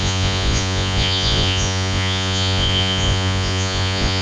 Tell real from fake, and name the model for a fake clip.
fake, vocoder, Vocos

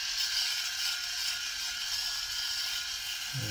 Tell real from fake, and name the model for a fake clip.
real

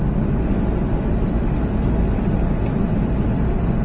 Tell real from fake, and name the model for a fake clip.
real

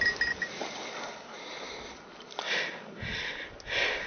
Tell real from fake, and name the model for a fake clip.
real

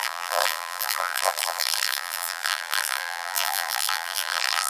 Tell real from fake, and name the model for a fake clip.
fake, vocoder, BigVGAN v2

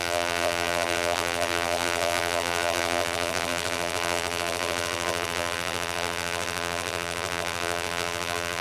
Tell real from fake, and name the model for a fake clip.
fake, vocoder, BigVGAN v2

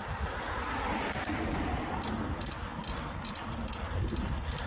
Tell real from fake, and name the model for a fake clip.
real